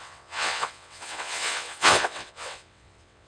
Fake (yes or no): yes